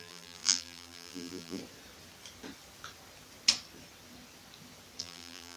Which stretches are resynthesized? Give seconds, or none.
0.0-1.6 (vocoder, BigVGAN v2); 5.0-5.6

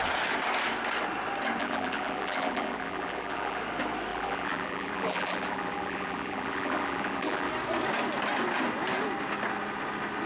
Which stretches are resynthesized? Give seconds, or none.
1.6-3.6 (vocoder, BigVGAN v2); 4.1-7.5

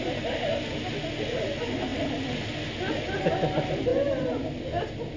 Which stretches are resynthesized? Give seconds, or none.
none

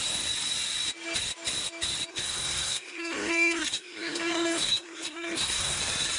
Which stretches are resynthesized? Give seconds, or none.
2.1-5.8 (codec, SNAC)

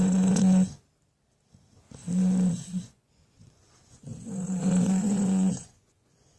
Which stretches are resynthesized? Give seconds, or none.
0.0-0.8 (vocoder, Vocos); 2.5-6.4

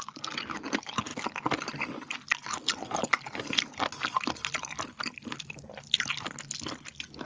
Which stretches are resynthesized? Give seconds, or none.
none